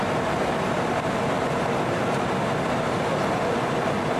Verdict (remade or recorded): recorded